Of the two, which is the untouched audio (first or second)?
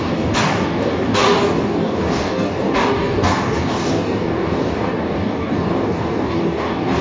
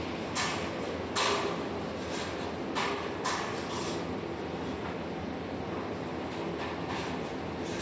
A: second